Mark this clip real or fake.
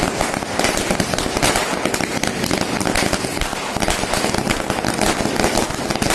real